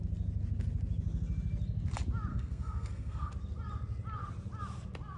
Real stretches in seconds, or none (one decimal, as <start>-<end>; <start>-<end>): 0.0-2.3; 3.3-5.2